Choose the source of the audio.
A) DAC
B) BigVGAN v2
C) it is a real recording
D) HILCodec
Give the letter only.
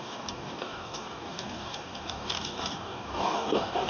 A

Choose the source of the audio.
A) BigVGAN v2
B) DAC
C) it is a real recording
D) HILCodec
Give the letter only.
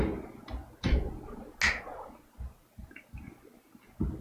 C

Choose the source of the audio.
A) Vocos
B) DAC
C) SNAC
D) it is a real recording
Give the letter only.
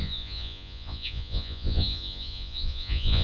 A